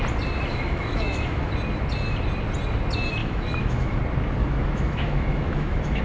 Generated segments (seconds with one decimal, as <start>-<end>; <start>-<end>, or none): 0.5-1.5; 3.2-4.0; 4.4-6.0